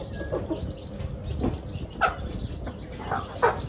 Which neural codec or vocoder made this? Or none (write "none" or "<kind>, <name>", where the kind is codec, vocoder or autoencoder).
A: none